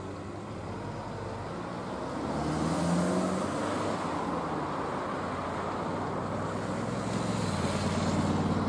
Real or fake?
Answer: real